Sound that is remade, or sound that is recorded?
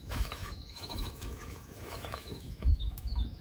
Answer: remade